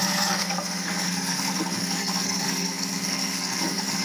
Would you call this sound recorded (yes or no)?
no